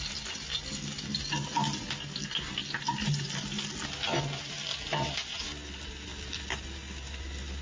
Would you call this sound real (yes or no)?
yes